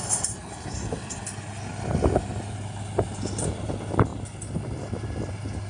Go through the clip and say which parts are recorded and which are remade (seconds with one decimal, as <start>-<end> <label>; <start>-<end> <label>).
0.0-5.7 recorded

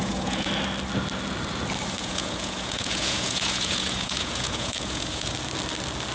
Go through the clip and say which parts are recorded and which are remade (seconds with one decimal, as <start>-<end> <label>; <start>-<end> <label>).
0.0-0.5 remade; 0.5-2.0 recorded; 2.0-5.3 remade; 5.3-6.1 recorded

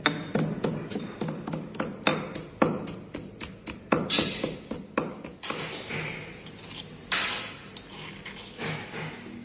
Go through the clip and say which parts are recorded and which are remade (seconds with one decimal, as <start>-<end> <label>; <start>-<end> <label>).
0.0-9.4 recorded

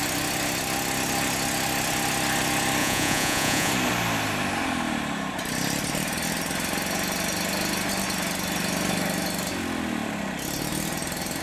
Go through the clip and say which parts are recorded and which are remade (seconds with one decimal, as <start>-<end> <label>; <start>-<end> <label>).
0.0-2.8 recorded; 2.8-3.7 remade; 3.7-11.4 recorded

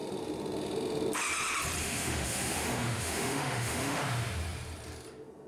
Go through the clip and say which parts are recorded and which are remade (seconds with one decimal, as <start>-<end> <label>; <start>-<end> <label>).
0.0-1.8 recorded; 1.8-4.0 remade; 4.0-5.5 recorded

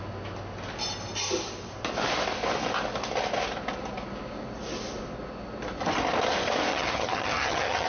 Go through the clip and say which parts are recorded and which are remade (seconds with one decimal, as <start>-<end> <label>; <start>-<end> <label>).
0.0-6.7 recorded; 6.7-7.9 remade